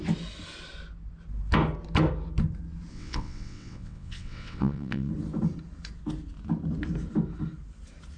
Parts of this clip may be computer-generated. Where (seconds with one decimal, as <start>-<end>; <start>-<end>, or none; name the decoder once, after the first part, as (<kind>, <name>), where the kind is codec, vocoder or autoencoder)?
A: 2.9-5.1 (vocoder, WaveNeXt)